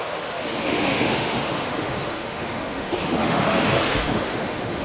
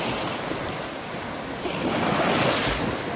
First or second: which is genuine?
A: second